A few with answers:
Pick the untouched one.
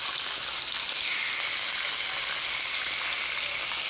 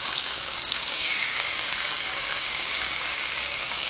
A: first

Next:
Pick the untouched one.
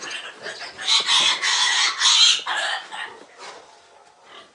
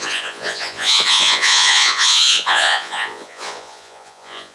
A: first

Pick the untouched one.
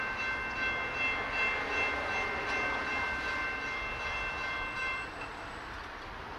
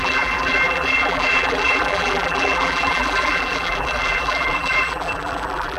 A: first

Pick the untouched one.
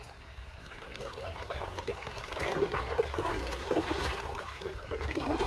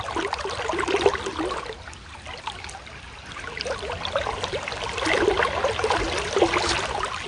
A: second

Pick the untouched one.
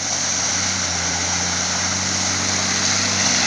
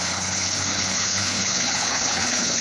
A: first